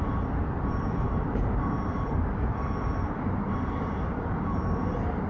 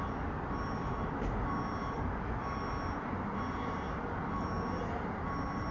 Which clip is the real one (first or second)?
second